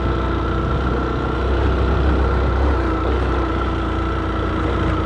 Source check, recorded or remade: recorded